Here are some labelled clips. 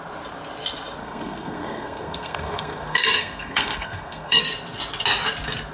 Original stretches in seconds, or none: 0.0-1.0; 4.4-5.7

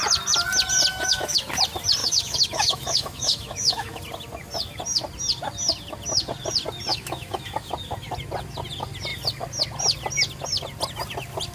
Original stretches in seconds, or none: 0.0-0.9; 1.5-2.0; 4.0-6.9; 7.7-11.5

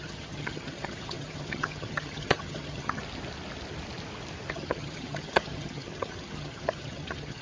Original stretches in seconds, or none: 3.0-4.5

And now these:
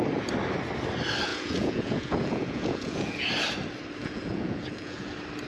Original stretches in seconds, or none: 0.0-1.3; 3.3-4.0; 5.1-5.5